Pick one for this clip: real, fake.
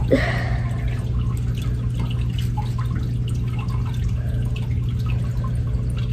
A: real